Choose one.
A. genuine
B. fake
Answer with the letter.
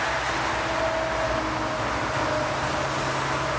A